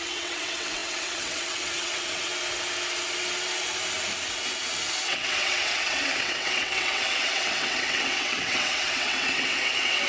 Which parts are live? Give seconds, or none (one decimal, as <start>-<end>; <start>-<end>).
2.3-5.0